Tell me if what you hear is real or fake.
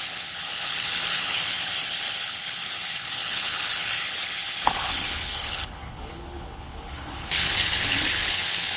fake